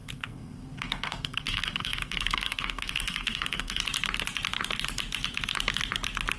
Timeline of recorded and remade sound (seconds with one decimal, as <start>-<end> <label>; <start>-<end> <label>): 0.0-3.8 remade; 3.8-6.4 recorded